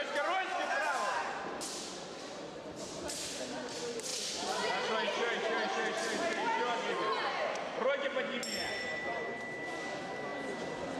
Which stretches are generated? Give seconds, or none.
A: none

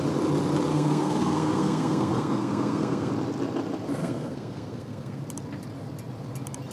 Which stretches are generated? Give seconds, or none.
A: 0.7-3.1 (codec, SNAC); 4.0-5.2

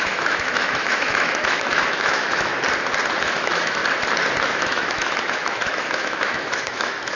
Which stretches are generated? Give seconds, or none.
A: 0.0-2.5 (autoencoder, DAC-VAE); 3.2-3.8; 4.4-7.2

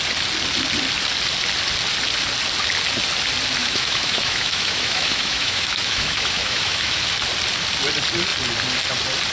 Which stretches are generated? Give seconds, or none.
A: 3.6-7.0 (autoencoder, DAC-VAE)

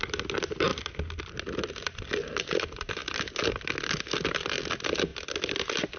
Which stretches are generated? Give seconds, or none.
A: none

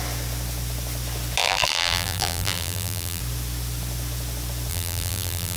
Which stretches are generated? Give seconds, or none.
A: 1.4-3.2 (vocoder, BigVGAN v2); 4.7-5.6